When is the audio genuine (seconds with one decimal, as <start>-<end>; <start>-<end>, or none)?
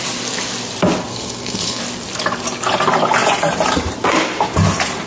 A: 0.0-1.1; 1.8-5.1